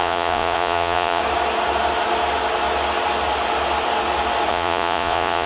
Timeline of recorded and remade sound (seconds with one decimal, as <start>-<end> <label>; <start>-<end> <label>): 0.0-1.2 remade; 1.2-4.5 recorded; 4.5-5.5 remade